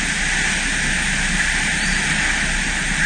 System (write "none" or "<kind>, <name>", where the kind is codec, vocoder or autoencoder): none